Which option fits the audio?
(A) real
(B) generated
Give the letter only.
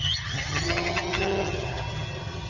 B